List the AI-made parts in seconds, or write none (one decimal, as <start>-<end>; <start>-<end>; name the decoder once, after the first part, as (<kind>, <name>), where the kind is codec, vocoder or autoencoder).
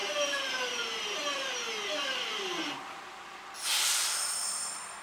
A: 0.0-1.5 (vocoder, BigVGAN v2)